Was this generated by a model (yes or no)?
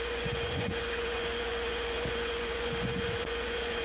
yes